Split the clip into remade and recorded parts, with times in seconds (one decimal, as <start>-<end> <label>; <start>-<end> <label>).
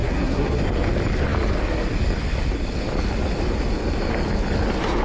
0.0-0.6 remade; 0.6-5.0 recorded